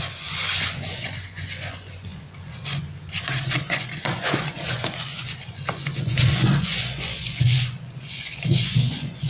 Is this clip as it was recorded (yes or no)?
no